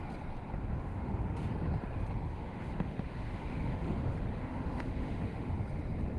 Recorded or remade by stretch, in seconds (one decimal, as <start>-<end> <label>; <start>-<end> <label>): 0.0-0.7 recorded; 0.7-1.5 remade; 1.5-2.3 recorded; 2.3-5.5 remade; 5.5-6.2 recorded